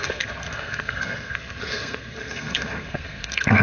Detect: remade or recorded remade